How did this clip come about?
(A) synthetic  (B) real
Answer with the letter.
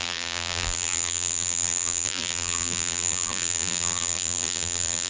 A